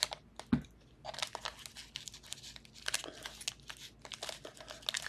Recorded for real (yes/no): yes